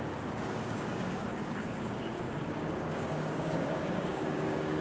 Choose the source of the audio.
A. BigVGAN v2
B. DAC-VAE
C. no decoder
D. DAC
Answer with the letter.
D